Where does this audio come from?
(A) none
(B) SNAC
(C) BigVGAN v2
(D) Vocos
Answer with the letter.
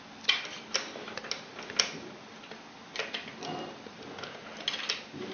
A